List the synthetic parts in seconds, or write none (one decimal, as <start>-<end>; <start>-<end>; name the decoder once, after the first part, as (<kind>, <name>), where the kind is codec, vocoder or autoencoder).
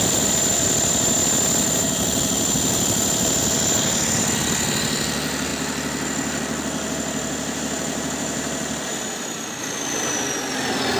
none